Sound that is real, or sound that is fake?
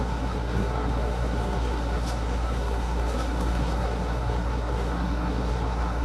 fake